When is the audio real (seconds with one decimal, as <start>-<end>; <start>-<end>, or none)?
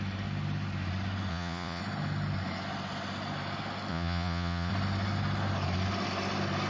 0.0-1.3; 1.8-3.9; 4.7-6.7